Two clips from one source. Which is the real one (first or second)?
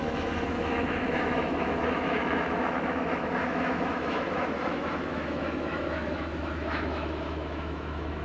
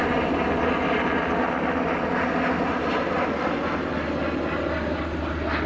second